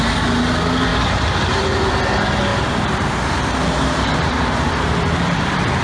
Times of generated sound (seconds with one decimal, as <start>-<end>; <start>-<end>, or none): 0.9-1.9; 2.5-5.8

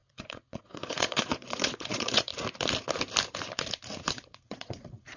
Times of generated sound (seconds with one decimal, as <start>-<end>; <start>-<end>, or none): 0.0-2.3; 4.1-5.2

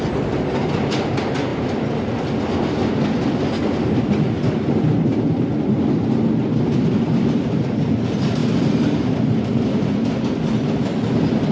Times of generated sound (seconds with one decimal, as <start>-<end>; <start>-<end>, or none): none

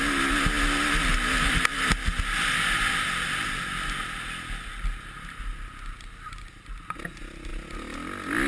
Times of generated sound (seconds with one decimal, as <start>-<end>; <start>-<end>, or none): none